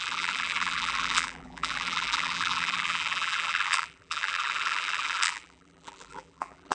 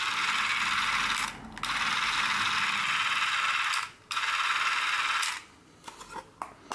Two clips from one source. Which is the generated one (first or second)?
first